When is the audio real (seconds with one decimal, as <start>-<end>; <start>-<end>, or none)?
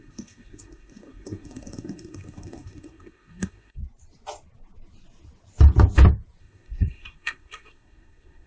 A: 3.8-6.4